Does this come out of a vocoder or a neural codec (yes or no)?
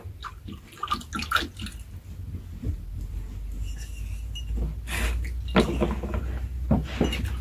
no